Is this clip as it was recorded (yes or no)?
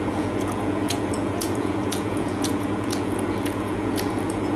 no